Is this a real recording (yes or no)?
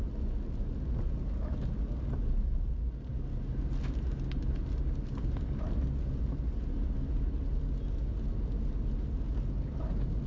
yes